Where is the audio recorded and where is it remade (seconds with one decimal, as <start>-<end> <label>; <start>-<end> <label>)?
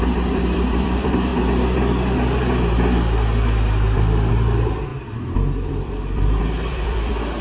0.0-1.3 remade; 1.3-4.3 recorded; 4.3-4.9 remade; 4.9-5.7 recorded; 5.7-7.4 remade